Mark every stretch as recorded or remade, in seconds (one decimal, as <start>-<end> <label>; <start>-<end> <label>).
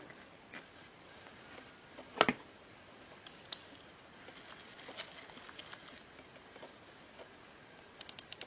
0.0-8.5 recorded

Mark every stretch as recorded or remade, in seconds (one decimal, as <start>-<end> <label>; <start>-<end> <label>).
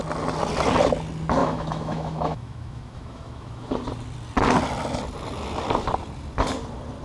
0.0-1.4 recorded; 1.4-3.7 remade; 3.7-7.0 recorded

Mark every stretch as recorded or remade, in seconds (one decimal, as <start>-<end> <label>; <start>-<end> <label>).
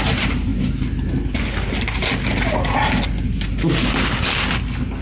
0.0-5.0 recorded